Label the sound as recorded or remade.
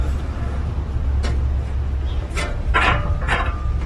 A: recorded